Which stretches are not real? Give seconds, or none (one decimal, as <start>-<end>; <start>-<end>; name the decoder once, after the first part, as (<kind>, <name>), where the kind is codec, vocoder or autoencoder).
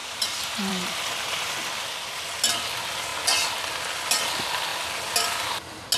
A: 0.0-1.5 (vocoder, BigVGAN v2)